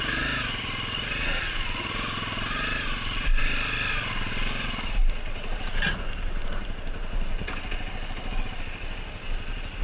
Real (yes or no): yes